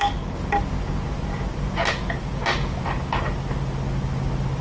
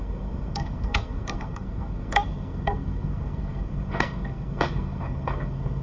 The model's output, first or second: second